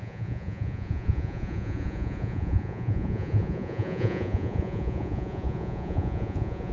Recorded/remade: remade